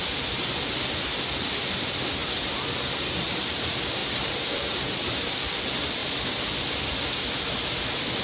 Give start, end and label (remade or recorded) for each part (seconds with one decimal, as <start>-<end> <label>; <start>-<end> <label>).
0.0-4.0 recorded; 4.0-5.6 remade; 5.6-6.0 recorded; 6.0-6.9 remade; 6.9-8.2 recorded